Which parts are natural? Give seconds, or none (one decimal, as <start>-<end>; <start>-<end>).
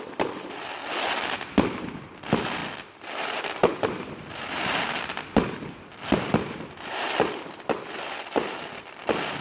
0.0-9.4